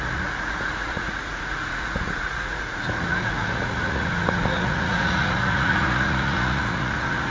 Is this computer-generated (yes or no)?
yes